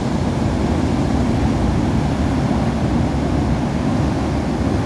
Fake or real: real